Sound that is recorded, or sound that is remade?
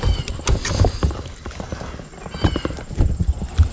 recorded